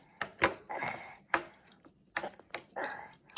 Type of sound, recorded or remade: recorded